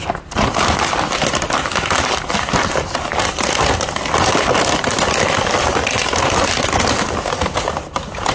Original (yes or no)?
yes